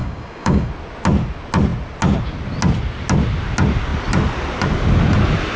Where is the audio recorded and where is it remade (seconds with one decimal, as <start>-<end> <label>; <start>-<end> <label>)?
0.0-0.7 remade; 0.7-5.6 recorded